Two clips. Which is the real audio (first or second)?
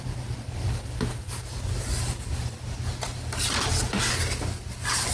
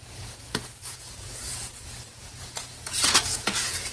first